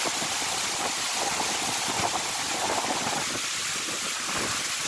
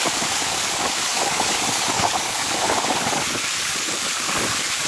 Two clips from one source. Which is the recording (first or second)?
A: first